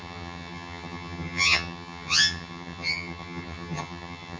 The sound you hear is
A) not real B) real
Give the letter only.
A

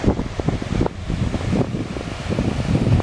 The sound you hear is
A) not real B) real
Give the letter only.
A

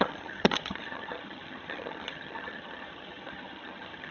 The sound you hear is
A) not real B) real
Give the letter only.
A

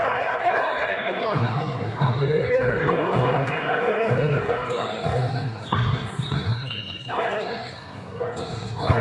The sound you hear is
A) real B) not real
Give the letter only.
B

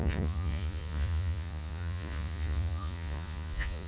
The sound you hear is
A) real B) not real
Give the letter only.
B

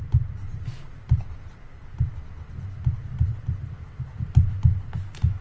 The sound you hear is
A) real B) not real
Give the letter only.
A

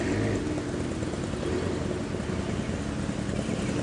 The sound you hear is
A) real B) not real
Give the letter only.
A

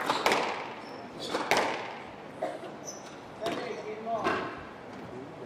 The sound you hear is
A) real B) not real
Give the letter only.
A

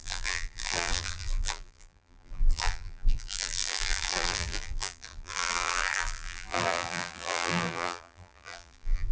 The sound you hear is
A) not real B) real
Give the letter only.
A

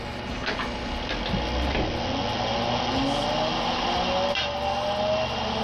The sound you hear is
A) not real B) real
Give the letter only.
B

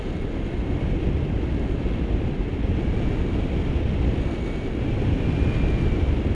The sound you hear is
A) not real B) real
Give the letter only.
B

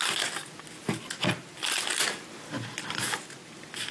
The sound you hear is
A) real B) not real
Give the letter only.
A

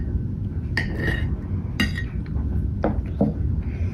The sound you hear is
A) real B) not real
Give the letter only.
A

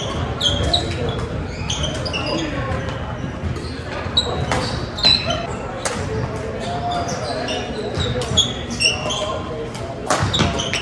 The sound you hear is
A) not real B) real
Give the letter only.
B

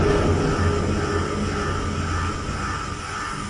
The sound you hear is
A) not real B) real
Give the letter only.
B